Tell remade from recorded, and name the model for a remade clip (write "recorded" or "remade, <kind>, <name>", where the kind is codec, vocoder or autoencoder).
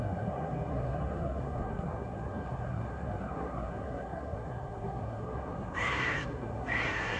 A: remade, codec, SNAC